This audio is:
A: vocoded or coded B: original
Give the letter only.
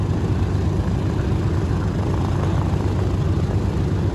B